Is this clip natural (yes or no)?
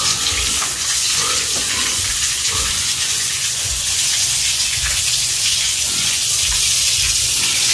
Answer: no